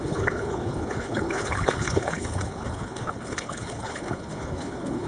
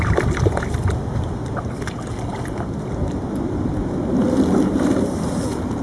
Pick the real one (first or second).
second